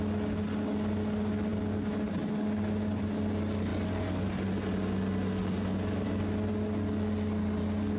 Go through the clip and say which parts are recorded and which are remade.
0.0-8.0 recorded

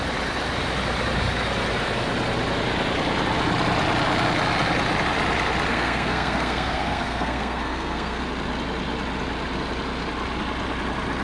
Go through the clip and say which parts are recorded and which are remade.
0.0-5.7 recorded; 5.7-8.2 remade; 8.2-11.2 recorded

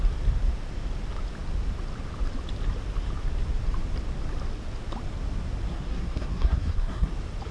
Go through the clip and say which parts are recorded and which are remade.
0.0-5.7 recorded; 5.7-7.1 remade; 7.1-7.5 recorded